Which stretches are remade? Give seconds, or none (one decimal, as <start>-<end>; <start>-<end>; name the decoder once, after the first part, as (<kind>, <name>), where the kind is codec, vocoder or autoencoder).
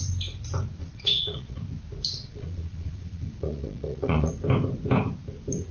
0.8-1.6 (vocoder, Vocos); 2.2-4.3